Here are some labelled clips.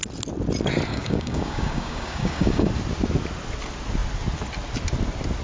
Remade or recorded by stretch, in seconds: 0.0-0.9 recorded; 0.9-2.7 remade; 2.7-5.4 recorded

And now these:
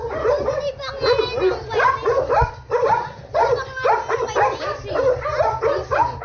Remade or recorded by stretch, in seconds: 0.0-6.2 recorded